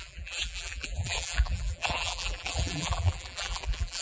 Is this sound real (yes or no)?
no